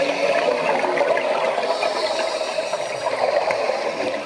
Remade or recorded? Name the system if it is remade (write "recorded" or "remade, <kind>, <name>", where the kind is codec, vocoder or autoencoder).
recorded